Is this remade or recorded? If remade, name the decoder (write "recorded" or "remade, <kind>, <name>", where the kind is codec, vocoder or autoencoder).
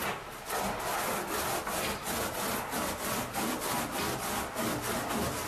recorded